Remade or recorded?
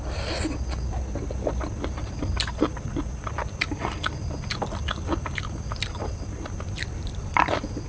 recorded